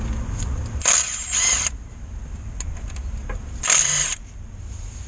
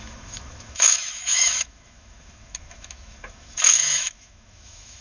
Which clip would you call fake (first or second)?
second